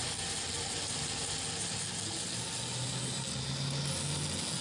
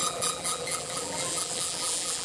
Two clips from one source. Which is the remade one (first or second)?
second